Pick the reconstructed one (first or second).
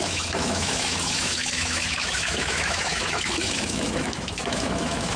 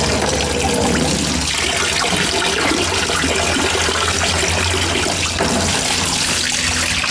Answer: first